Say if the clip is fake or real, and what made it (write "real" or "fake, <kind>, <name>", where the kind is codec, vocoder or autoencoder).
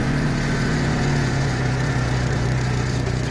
fake, vocoder, Vocos